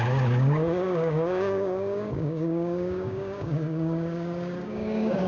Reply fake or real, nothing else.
fake